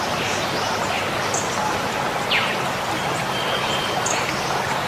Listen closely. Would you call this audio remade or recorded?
recorded